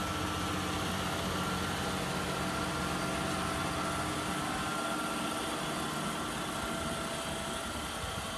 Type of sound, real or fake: real